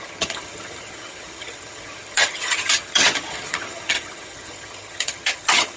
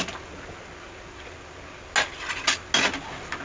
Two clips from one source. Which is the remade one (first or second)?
first